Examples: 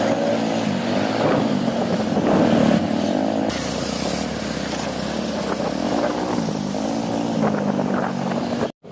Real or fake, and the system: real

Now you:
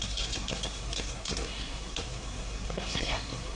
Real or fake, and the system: fake, codec, SNAC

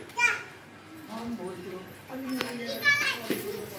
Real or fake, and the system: fake, vocoder, BigVGAN v2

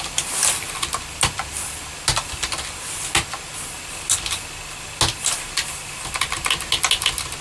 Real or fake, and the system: real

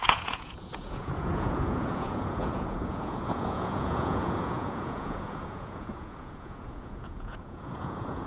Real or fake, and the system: fake, vocoder, Vocos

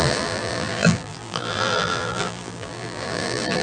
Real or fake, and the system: fake, vocoder, BigVGAN v2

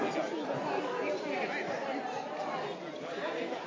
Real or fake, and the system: real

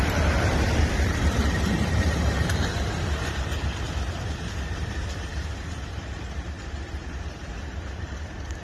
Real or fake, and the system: fake, vocoder, BigVGAN v2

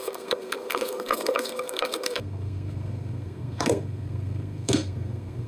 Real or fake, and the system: fake, codec, SNAC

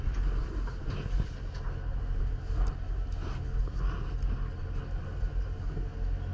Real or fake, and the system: real